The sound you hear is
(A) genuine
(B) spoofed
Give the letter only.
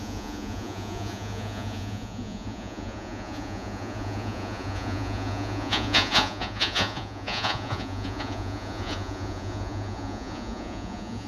B